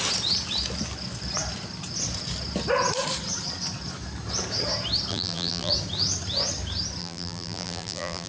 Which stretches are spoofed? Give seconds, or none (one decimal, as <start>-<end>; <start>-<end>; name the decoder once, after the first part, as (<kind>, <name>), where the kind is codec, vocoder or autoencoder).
5.1-5.7 (vocoder, BigVGAN v2); 7.0-8.3